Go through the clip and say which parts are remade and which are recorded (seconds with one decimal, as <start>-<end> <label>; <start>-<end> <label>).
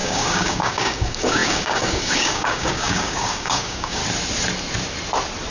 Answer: 0.0-4.0 remade; 4.0-5.5 recorded